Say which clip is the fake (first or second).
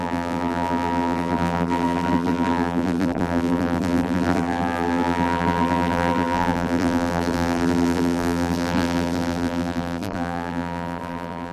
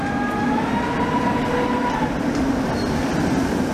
first